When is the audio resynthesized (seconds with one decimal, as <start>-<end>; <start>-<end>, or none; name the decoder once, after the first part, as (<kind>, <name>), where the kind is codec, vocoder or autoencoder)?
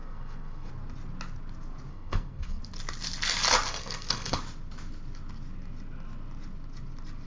0.0-0.7 (codec, SNAC); 1.9-2.6; 3.7-4.4